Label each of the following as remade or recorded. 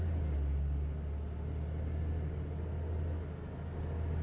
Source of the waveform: recorded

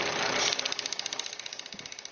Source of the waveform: recorded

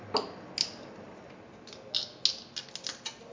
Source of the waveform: recorded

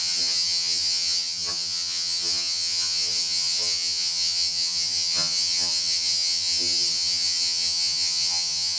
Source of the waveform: remade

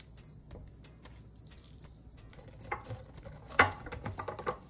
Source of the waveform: recorded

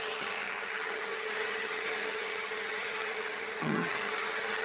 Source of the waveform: remade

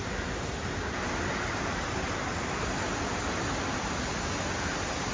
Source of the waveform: recorded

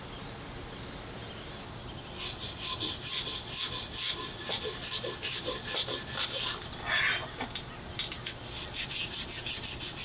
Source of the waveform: recorded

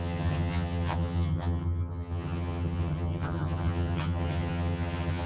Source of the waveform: remade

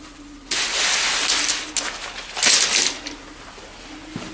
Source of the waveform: recorded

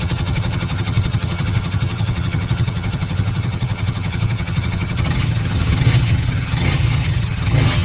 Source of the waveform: remade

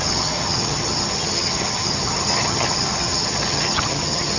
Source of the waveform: remade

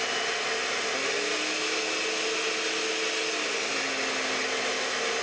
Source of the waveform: recorded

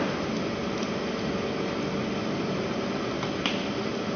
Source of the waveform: recorded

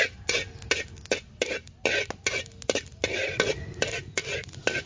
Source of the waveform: recorded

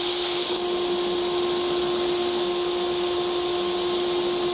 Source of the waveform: recorded